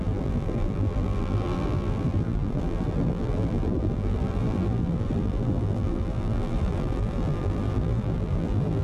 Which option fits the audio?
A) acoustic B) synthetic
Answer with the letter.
B